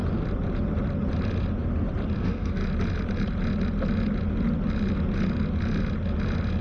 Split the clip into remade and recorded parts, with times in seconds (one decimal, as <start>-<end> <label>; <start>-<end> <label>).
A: 0.0-2.2 recorded; 2.2-2.6 remade; 2.6-6.6 recorded

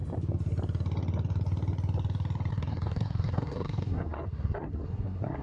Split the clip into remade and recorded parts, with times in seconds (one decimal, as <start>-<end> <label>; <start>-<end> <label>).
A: 0.0-2.5 recorded; 2.5-5.4 remade